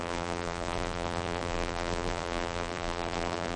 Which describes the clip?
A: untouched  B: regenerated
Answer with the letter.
B